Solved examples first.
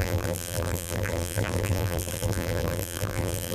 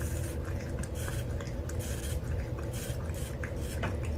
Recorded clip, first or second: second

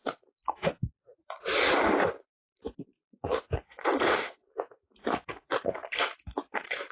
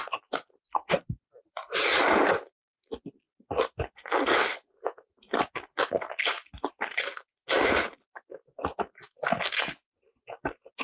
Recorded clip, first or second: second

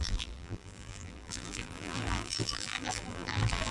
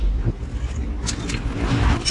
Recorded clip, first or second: second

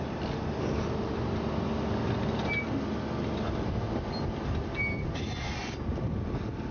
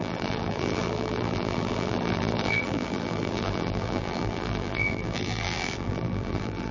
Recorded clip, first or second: first